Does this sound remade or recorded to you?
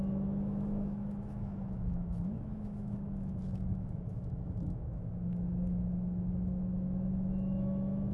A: remade